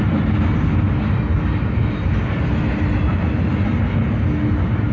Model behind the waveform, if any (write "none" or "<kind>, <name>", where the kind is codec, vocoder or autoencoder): none